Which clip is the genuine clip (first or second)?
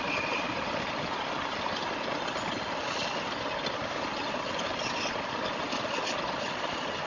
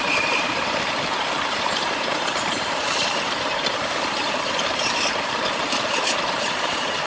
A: first